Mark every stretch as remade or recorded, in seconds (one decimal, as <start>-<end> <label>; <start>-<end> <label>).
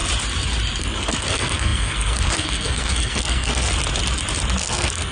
0.0-0.8 recorded; 0.8-3.7 remade; 3.7-4.6 recorded; 4.6-5.1 remade